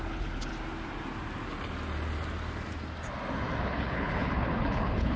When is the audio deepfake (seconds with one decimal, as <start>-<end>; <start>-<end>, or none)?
0.0-0.5; 3.6-5.2